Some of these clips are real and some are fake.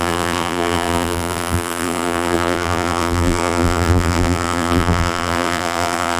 fake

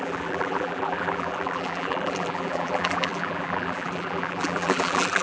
fake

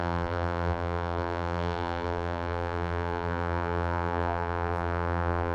fake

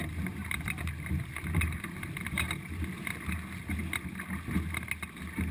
real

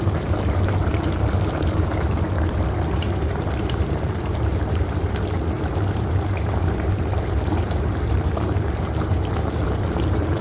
fake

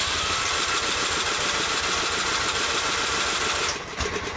fake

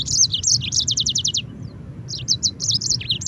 fake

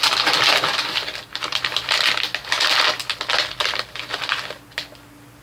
real